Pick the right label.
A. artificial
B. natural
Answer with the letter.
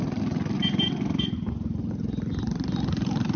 B